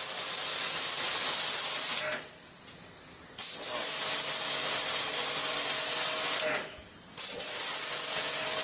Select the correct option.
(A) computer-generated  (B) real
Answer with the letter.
B